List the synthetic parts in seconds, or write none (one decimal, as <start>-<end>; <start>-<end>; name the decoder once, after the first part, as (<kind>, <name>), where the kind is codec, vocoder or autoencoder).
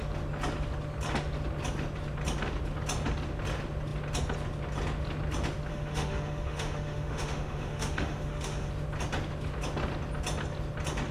5.7-8.7 (autoencoder, DAC-VAE)